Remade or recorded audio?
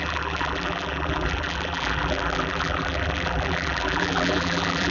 remade